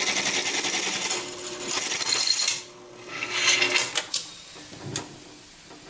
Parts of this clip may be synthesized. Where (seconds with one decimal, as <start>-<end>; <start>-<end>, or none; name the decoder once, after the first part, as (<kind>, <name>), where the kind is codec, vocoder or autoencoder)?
3.1-3.6 (codec, SNAC)